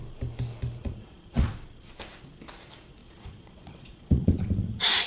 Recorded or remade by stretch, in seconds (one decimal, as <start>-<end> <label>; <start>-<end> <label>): 0.0-0.8 recorded; 0.8-1.5 remade; 1.5-3.0 recorded; 3.0-5.1 remade